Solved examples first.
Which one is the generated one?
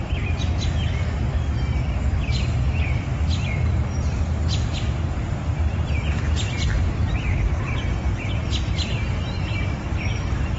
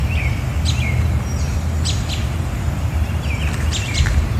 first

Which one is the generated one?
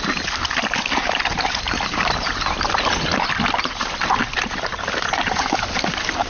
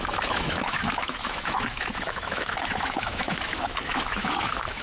second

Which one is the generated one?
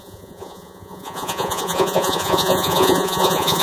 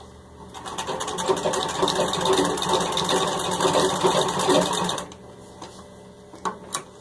first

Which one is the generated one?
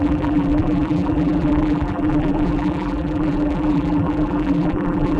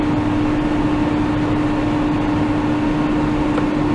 first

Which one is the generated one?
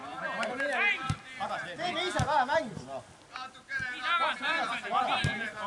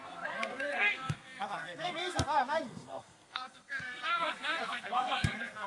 second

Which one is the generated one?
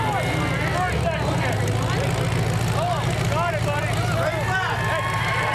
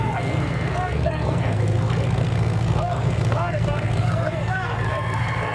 second